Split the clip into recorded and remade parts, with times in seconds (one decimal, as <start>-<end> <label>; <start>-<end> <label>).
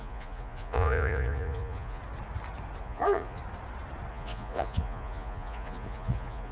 0.0-2.0 remade; 2.0-2.8 recorded; 2.8-3.4 remade; 3.4-4.1 recorded; 4.1-6.5 remade